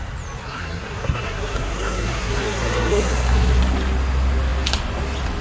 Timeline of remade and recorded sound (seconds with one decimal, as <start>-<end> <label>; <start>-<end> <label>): 0.0-0.4 recorded; 0.4-3.6 remade; 3.6-5.4 recorded

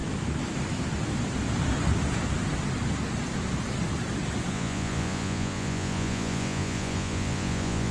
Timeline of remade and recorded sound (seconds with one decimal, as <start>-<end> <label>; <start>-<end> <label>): 0.0-4.5 recorded; 4.5-7.9 remade

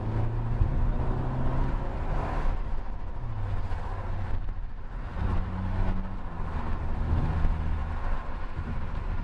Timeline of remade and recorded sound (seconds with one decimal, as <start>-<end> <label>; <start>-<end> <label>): 0.0-9.2 recorded

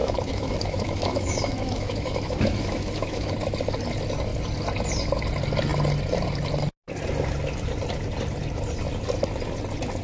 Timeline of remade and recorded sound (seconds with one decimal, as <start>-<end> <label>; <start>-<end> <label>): 0.0-3.3 remade; 3.3-10.0 recorded

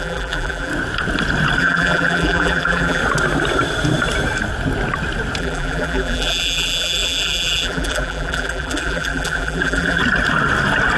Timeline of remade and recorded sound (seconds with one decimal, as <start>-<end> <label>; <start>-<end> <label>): 0.0-0.7 remade; 0.7-1.6 recorded; 1.6-3.0 remade; 3.0-5.4 recorded; 5.4-10.0 remade; 10.0-11.0 recorded

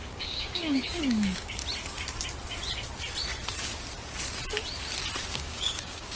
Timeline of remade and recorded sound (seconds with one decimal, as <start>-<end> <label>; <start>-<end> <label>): 0.0-1.6 remade; 1.6-5.3 recorded; 5.3-6.2 remade